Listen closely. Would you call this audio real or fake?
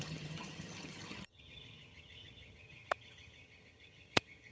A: fake